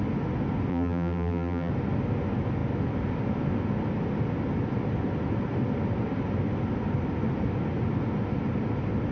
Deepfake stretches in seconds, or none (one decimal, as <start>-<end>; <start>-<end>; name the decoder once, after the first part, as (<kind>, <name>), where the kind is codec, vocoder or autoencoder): 0.7-1.7 (vocoder, BigVGAN v2)